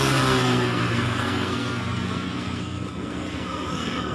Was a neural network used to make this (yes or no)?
yes